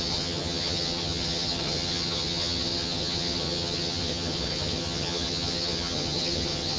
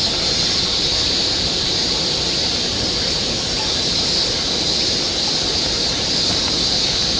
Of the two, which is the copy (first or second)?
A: first